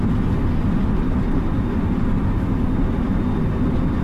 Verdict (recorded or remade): recorded